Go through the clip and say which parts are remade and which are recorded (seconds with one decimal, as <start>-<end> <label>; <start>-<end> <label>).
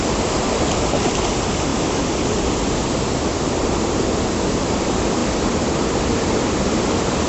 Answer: 0.0-7.3 recorded